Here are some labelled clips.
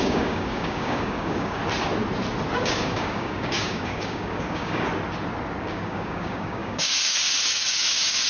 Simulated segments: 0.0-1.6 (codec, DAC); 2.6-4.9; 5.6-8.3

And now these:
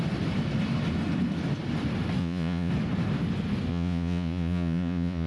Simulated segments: 2.2-2.7 (vocoder, Vocos); 3.7-5.3